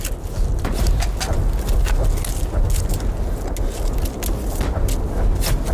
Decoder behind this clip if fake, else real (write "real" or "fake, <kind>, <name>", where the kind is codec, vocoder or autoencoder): real